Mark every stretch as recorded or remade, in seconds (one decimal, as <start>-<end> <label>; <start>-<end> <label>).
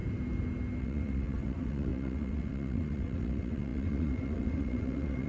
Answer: 0.0-0.8 recorded; 0.8-5.3 remade